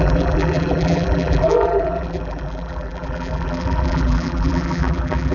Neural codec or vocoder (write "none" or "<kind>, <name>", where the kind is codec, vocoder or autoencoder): vocoder, BigVGAN v2